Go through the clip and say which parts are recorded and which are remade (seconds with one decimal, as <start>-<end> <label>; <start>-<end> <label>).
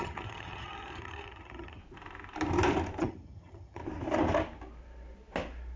0.0-1.8 remade; 1.8-3.0 recorded; 3.0-3.8 remade; 3.8-5.8 recorded